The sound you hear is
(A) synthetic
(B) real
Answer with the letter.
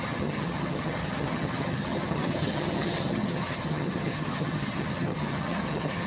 A